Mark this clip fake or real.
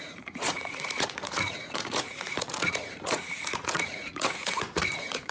fake